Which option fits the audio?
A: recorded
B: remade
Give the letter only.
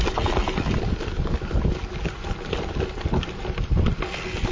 A